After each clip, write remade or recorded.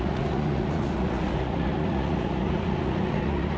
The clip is remade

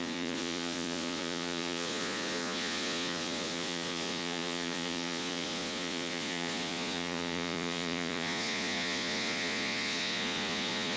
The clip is remade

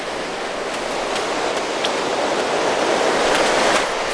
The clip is recorded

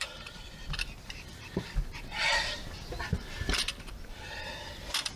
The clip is remade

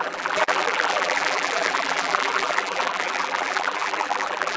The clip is remade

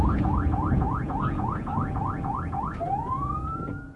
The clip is remade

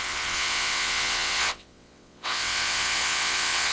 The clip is remade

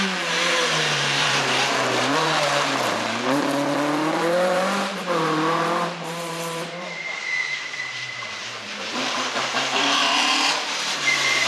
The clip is remade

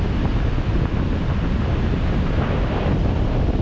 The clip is recorded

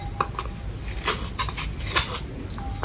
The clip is recorded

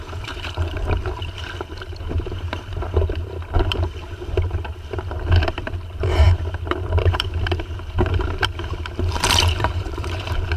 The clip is remade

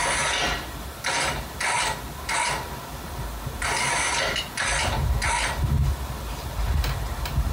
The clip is recorded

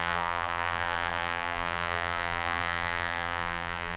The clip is remade